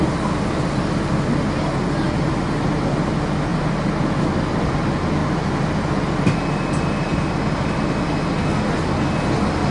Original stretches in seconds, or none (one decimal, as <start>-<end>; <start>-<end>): 0.0-9.7